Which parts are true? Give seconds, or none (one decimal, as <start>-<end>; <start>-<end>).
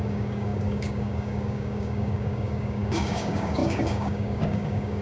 none